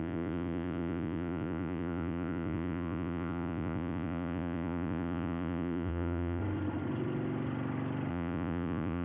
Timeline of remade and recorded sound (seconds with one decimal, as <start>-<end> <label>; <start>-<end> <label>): 0.0-6.4 remade; 6.4-8.1 recorded; 8.1-9.0 remade